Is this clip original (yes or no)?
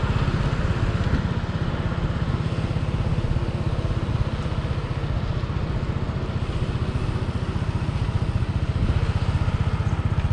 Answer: yes